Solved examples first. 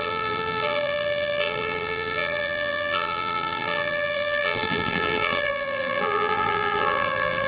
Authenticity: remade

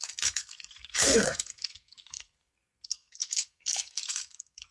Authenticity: remade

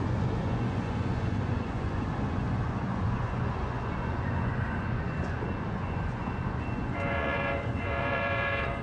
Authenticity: remade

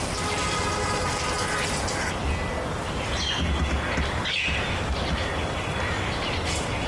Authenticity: recorded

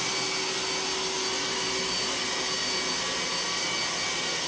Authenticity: recorded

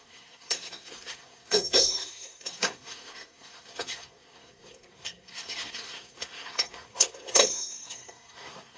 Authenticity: remade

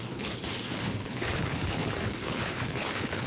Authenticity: remade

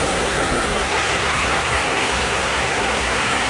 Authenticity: remade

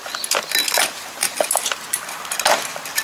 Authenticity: recorded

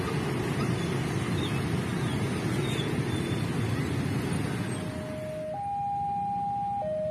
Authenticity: recorded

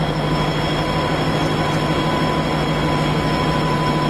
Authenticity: recorded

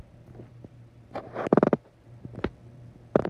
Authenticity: recorded